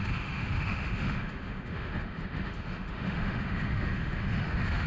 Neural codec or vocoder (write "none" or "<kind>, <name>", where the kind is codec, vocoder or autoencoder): autoencoder, DAC-VAE